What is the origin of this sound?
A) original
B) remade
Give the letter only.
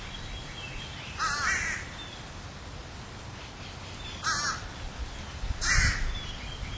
A